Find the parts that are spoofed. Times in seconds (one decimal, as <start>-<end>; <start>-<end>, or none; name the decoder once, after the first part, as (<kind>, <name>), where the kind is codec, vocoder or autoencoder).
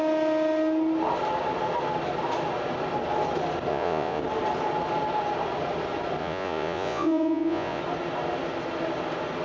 3.7-4.2 (vocoder, Vocos); 6.2-7.8